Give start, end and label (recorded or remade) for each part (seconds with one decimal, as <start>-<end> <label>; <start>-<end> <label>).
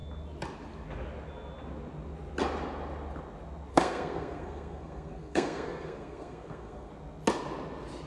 0.0-3.7 recorded; 3.7-6.9 remade; 6.9-8.1 recorded